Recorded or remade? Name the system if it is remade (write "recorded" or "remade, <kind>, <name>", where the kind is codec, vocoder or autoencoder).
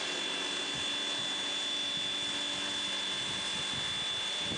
recorded